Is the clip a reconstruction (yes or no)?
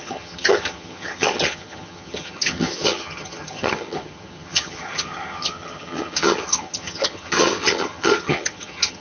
yes